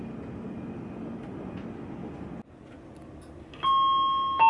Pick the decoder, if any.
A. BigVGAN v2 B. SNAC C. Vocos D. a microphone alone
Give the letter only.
D